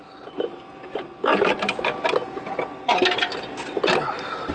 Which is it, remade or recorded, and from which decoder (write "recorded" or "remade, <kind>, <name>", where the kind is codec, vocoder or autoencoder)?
recorded